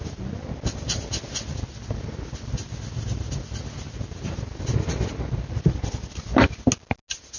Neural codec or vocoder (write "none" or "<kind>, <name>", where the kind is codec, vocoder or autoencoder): none